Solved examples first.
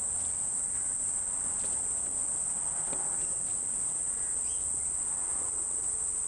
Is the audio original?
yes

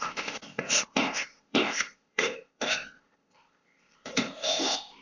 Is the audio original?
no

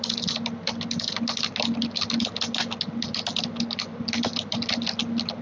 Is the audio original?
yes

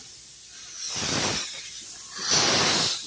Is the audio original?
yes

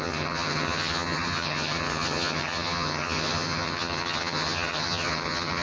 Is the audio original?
no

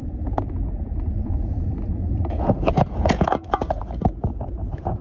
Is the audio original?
no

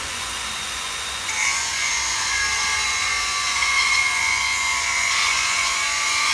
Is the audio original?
no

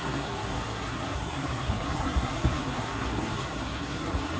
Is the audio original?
no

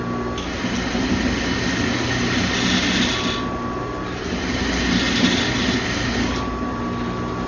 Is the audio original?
yes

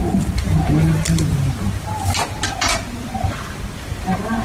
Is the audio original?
yes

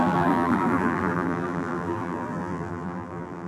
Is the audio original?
no